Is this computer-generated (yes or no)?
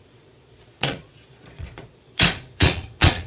yes